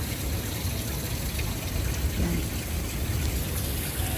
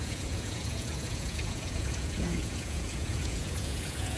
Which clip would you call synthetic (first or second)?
second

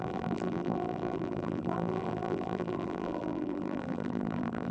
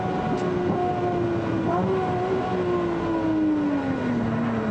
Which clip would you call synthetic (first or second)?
first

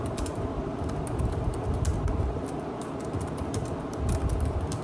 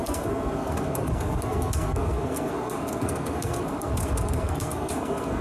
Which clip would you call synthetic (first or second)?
second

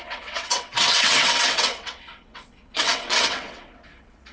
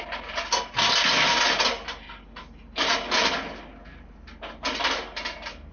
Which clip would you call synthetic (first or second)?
first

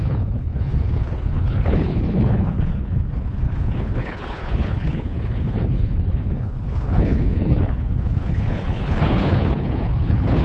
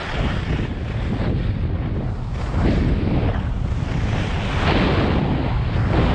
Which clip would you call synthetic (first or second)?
first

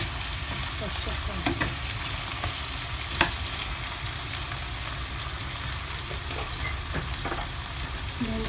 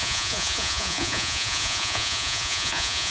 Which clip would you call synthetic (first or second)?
second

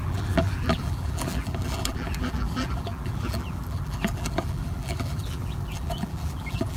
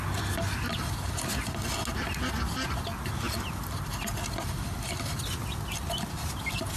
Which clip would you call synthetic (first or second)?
first